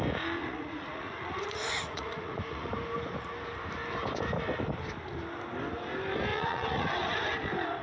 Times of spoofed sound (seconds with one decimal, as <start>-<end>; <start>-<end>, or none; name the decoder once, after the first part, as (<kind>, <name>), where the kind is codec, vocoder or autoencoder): 0.4-2.7 (vocoder, Vocos); 6.3-6.9